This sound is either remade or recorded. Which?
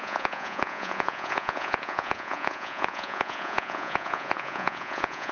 remade